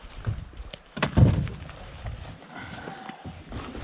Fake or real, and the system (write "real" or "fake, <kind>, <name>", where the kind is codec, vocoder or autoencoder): real